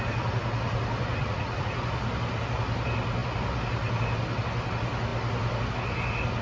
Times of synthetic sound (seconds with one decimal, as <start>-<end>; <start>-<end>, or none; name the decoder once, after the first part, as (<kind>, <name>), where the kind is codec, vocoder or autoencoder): 1.2-1.7 (vocoder, Vocos)